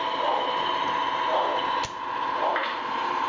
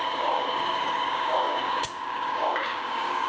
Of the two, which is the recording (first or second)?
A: first